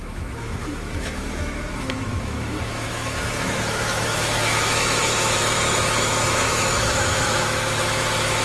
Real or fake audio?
fake